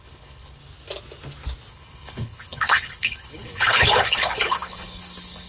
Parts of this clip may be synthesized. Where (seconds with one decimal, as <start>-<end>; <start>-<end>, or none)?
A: 0.0-0.6; 1.7-5.5